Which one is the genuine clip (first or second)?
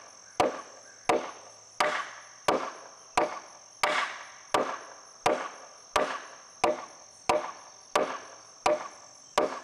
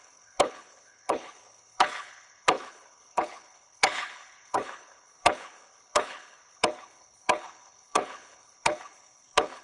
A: first